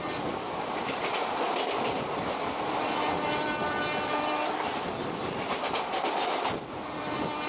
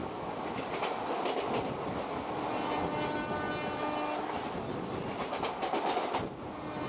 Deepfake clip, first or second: first